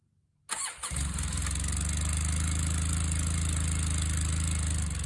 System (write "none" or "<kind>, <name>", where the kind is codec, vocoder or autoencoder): none